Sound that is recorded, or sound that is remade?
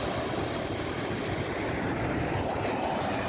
recorded